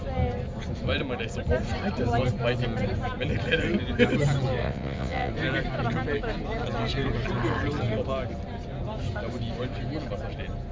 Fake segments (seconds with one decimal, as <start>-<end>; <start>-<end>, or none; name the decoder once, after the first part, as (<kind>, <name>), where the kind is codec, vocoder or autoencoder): 4.6-5.3 (vocoder, WaveNeXt)